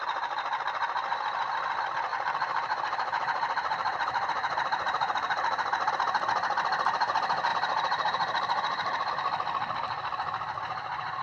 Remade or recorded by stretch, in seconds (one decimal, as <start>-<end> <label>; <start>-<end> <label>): 0.0-2.1 recorded; 2.1-5.9 remade; 5.9-7.5 recorded; 7.5-9.1 remade; 9.1-11.2 recorded